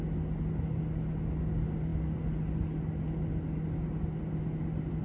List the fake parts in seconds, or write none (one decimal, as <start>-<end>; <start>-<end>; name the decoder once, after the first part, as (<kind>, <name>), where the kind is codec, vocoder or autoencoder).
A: none